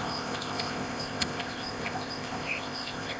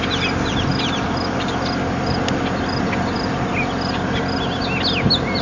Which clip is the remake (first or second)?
first